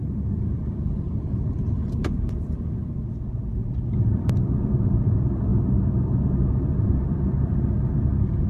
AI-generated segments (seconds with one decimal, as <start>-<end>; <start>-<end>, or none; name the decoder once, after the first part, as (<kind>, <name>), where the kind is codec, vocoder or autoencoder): 0.0-5.5 (vocoder, BigVGAN v2); 6.6-8.5